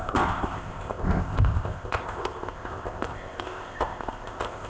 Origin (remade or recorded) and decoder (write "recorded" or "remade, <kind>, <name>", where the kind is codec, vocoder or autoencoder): remade, codec, ZipCodec